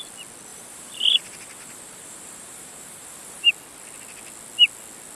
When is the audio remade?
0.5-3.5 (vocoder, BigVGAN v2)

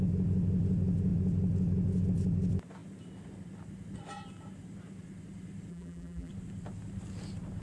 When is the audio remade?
5.7-6.3 (vocoder, BigVGAN v2)

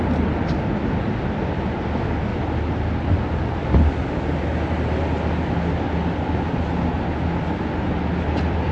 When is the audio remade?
0.0-2.3 (vocoder, BigVGAN v2); 7.3-8.7

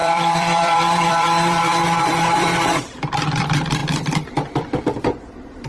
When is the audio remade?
0.0-2.5 (vocoder, BigVGAN v2); 3.0-5.7

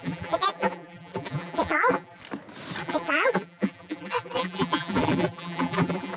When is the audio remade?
0.0-2.2 (vocoder, BigVGAN v2); 2.8-6.2

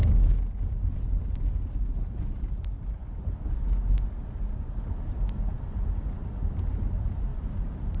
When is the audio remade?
2.0-3.0 (vocoder, BigVGAN v2); 4.5-8.0

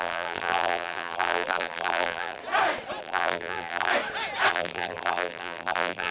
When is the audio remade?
0.0-2.4 (vocoder, BigVGAN v2); 3.0-3.9; 4.5-6.1